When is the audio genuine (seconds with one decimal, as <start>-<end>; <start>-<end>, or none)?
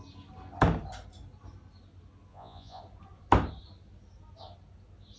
0.0-2.3; 2.8-5.2